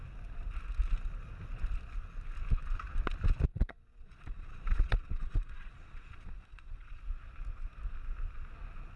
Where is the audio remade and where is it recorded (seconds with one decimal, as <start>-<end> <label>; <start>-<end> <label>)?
0.0-3.5 recorded; 3.5-7.0 remade; 7.0-9.0 recorded